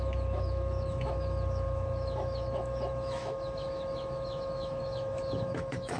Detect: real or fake fake